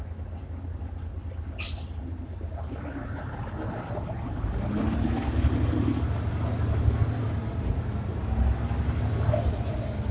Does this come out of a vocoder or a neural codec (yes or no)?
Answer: no